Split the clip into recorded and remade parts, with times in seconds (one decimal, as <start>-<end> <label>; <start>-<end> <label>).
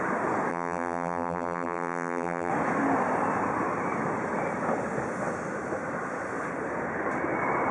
0.0-0.5 recorded; 0.5-2.5 remade; 2.5-7.7 recorded